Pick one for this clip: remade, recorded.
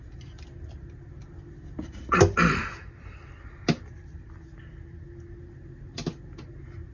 recorded